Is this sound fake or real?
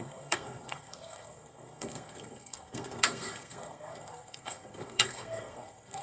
fake